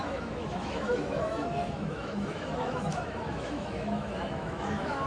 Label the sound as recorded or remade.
remade